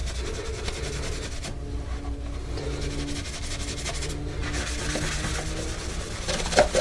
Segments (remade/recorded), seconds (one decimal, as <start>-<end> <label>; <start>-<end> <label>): 0.0-6.8 recorded